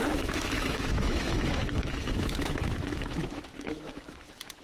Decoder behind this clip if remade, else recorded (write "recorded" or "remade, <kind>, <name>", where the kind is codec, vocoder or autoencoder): remade, autoencoder, DAC-VAE